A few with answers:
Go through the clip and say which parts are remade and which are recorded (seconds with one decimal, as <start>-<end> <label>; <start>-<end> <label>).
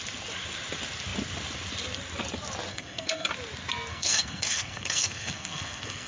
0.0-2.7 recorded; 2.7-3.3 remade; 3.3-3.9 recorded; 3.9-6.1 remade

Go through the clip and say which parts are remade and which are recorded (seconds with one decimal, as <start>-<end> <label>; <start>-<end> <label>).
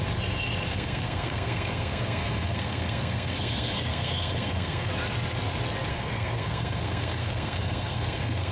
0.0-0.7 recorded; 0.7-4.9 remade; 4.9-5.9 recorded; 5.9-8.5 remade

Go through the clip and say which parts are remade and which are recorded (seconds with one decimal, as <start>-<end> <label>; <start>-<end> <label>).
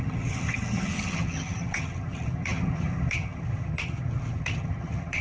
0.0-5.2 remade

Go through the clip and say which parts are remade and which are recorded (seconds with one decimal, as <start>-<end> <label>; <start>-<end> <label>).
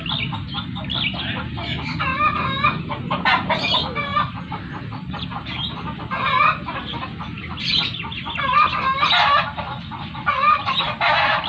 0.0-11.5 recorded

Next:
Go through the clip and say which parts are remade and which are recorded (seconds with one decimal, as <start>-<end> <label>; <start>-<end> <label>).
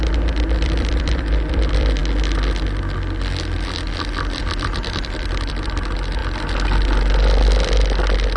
0.0-2.0 remade; 2.0-4.4 recorded; 4.4-6.2 remade; 6.2-8.4 recorded